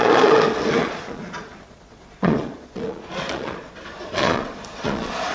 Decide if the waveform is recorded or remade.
remade